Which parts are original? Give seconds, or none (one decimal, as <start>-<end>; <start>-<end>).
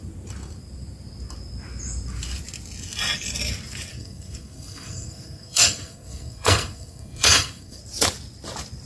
0.0-3.9; 7.8-8.9